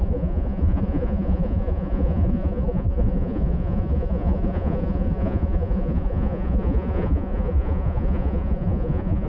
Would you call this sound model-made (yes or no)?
yes